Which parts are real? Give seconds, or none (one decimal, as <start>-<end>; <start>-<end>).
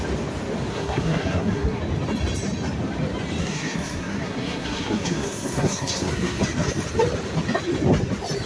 0.0-0.7; 1.8-3.4; 6.4-8.5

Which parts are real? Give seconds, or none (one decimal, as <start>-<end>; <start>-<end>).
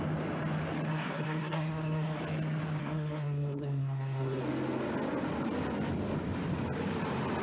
0.0-0.9; 2.2-2.8; 4.4-7.4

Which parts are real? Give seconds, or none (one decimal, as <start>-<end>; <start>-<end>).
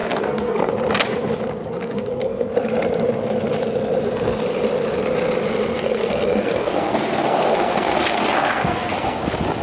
0.7-1.6; 2.5-5.7; 9.2-9.6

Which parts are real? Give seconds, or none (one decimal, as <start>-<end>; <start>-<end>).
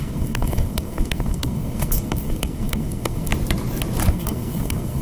3.3-4.1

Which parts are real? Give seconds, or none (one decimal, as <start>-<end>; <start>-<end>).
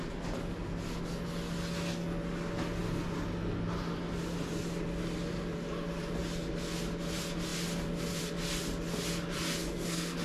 0.0-9.6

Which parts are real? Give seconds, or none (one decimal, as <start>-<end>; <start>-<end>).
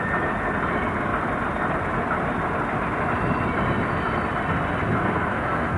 0.0-5.0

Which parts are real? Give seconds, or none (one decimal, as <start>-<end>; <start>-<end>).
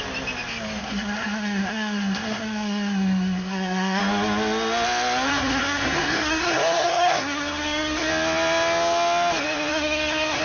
0.0-0.8; 4.0-5.3; 8.1-9.7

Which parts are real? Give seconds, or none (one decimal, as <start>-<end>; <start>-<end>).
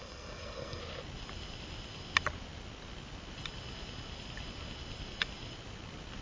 0.8-6.2